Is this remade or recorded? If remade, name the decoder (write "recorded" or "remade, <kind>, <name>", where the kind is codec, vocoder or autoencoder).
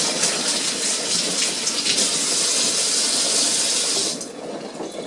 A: recorded